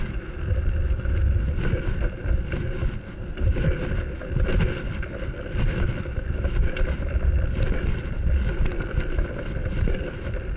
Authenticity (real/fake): real